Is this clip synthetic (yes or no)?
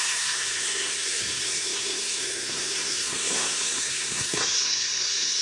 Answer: yes